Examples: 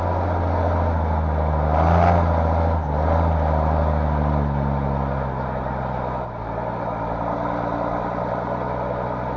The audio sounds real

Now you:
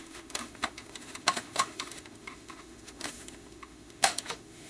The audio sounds fake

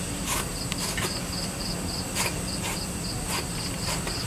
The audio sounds real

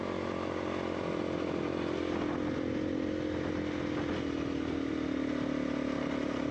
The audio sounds real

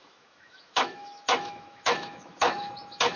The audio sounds fake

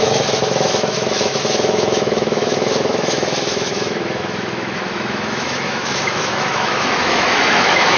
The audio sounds fake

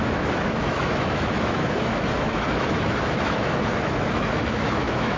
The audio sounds fake